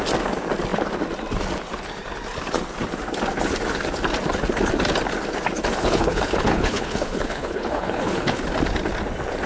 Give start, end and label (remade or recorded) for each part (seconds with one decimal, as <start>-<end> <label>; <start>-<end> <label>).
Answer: 0.0-5.8 recorded; 5.8-8.4 remade; 8.4-9.5 recorded

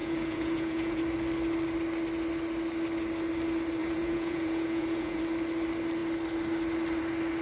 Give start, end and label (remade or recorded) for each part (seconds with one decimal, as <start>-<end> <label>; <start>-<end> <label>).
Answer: 0.0-1.0 remade; 1.0-3.8 recorded; 3.8-5.2 remade; 5.2-7.4 recorded

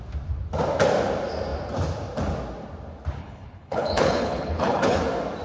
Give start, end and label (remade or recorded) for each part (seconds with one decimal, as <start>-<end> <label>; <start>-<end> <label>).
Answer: 0.0-3.2 recorded; 3.2-5.0 remade; 5.0-5.4 recorded

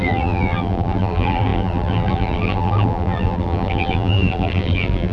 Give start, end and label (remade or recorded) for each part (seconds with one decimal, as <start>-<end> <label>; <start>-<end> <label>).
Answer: 0.0-5.1 remade

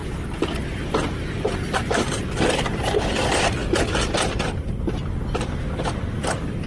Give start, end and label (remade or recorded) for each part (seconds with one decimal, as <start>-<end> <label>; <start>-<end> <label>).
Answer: 0.0-1.7 recorded; 1.7-3.6 remade; 3.6-5.4 recorded; 5.4-6.7 remade

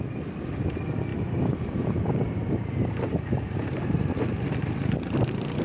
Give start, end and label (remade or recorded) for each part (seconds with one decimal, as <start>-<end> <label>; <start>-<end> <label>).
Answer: 0.0-1.1 recorded; 1.1-3.8 remade; 3.8-5.6 recorded

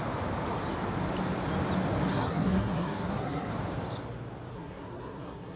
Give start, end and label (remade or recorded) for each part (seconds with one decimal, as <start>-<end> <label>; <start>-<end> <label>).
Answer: 0.0-2.1 recorded; 2.1-3.5 remade; 3.5-4.5 recorded; 4.5-5.6 remade

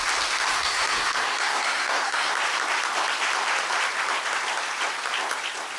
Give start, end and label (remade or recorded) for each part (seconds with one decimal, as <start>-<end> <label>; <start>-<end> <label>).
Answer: 0.0-0.5 recorded; 0.5-2.3 remade; 2.3-5.8 recorded